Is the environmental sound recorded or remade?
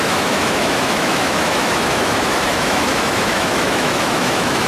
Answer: remade